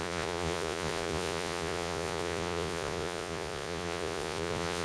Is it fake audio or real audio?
fake